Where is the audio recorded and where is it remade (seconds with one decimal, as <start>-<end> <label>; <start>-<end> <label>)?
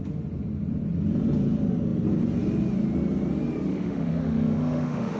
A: 0.0-3.7 recorded; 3.7-5.2 remade